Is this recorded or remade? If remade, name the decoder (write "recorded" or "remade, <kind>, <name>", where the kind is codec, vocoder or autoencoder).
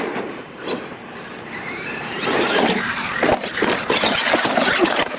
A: remade, vocoder, BigVGAN v2